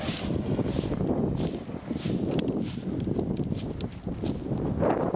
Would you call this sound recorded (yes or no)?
yes